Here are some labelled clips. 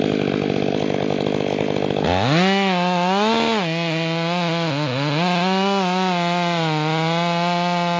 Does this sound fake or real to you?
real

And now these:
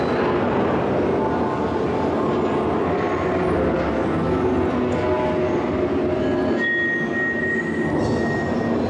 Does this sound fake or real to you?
real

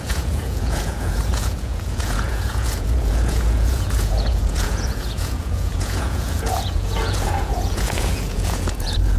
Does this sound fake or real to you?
fake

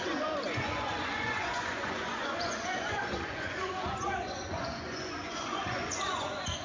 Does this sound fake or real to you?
fake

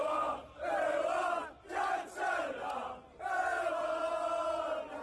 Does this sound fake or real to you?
real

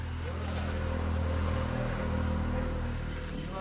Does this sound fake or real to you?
real